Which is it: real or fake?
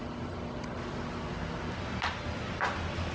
real